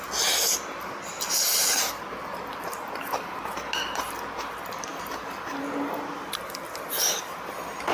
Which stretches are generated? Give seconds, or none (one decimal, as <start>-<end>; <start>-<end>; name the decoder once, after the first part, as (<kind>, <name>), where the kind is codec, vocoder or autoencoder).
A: none